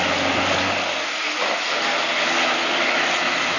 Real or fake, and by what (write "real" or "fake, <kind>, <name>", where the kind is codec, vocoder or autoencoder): real